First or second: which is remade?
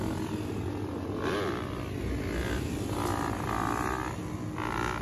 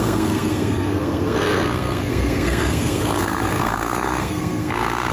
second